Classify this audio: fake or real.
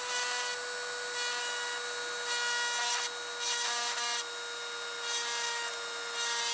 real